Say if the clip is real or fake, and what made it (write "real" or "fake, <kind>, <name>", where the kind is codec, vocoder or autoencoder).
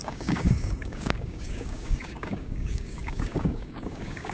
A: fake, codec, DAC